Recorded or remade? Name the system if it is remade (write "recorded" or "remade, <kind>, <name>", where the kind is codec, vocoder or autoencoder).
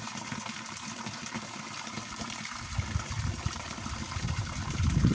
remade, vocoder, BigVGAN v2